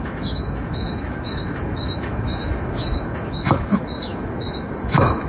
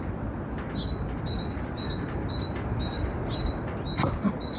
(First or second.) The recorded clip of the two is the second